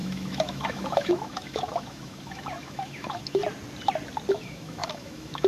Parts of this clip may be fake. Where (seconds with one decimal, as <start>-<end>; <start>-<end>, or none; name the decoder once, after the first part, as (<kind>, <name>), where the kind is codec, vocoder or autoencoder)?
0.0-3.4 (autoencoder, DAC-VAE); 4.3-5.5